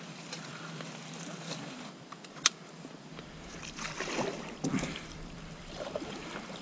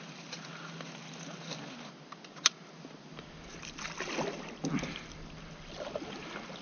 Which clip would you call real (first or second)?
second